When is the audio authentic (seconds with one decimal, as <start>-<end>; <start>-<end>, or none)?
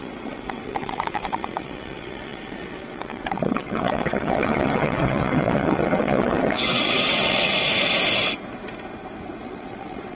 7.5-9.4